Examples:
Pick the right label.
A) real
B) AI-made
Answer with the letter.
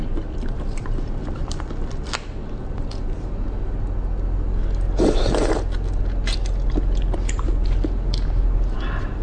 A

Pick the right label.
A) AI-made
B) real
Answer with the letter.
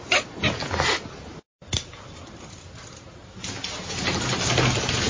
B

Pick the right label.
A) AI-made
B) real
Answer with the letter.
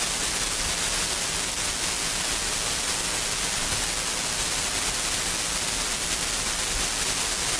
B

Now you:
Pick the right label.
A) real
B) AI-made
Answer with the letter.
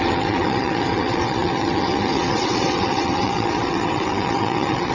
B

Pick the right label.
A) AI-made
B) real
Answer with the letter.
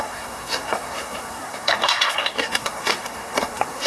A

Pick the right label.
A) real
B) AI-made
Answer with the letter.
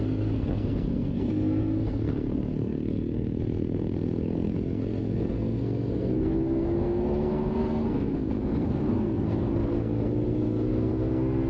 B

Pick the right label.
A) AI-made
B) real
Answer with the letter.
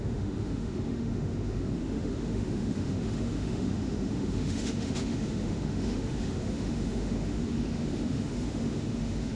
A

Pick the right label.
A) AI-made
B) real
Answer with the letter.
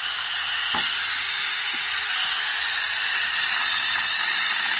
B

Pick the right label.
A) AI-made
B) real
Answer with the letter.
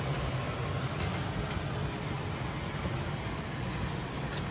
B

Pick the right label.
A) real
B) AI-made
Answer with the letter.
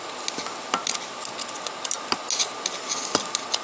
A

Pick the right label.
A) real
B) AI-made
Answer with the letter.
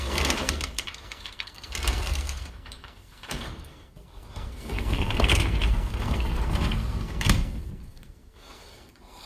B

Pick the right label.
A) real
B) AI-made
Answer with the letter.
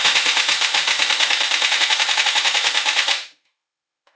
B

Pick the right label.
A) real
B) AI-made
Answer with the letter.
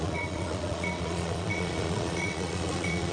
B